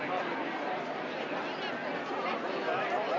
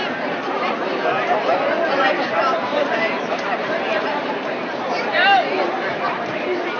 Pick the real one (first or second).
first